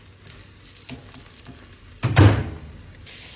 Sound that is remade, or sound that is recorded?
recorded